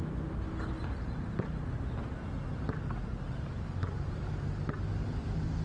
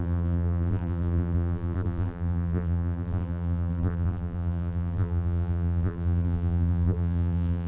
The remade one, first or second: second